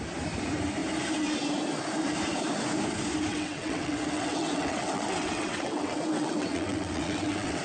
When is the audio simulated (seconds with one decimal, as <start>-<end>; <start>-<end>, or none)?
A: 3.3-7.6